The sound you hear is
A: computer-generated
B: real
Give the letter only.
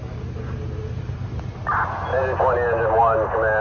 B